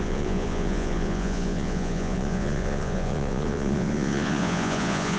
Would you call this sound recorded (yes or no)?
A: no